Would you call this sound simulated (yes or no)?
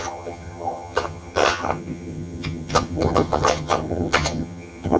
yes